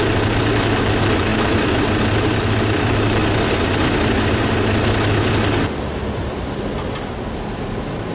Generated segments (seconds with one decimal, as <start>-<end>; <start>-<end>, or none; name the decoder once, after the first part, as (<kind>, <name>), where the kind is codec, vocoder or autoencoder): 0.0-3.2 (vocoder, BigVGAN v2); 7.3-8.1